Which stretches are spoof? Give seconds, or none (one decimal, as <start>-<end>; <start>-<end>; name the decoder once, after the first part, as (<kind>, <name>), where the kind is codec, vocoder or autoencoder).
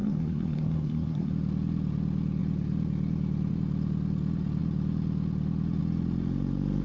0.0-1.3 (codec, SNAC)